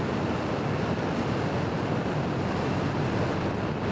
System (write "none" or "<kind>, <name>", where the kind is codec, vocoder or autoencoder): none